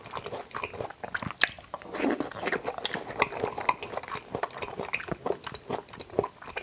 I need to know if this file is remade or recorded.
recorded